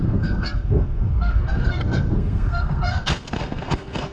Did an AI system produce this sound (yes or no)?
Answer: yes